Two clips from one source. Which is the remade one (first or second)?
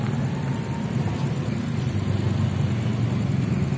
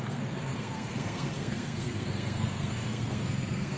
second